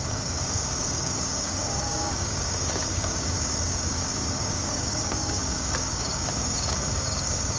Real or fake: fake